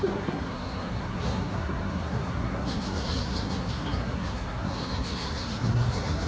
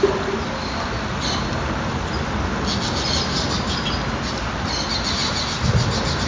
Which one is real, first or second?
second